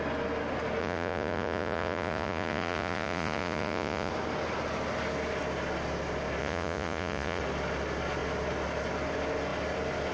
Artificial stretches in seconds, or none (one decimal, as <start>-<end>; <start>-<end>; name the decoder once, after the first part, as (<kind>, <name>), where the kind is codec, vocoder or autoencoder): 0.8-4.1 (vocoder, Vocos); 6.4-7.4